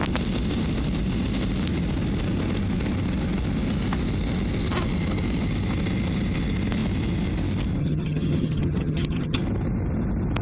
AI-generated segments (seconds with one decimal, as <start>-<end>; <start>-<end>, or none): 7.8-9.4